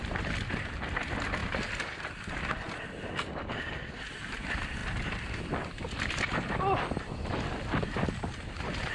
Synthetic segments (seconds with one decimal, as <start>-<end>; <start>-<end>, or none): none